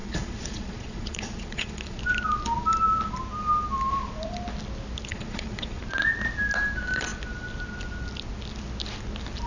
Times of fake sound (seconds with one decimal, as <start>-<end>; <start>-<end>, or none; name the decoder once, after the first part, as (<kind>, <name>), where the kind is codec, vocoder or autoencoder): 0.0-2.0 (vocoder, Vocos); 5.1-5.8